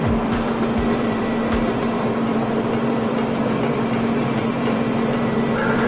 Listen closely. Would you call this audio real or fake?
fake